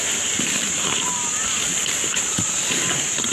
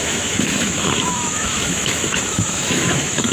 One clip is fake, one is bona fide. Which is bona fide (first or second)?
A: first